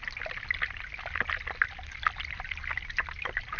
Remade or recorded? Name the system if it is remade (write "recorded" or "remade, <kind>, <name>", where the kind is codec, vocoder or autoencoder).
recorded